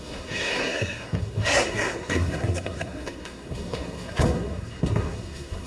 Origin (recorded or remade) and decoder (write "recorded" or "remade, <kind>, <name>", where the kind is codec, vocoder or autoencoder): remade, codec, SNAC